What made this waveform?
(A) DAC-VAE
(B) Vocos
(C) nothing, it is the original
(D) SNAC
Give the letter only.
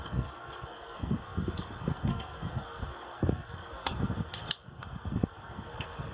D